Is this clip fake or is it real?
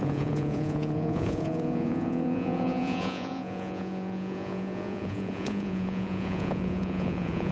fake